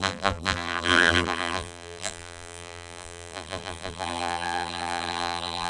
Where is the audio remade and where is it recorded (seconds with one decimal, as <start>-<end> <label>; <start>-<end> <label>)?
0.0-5.7 remade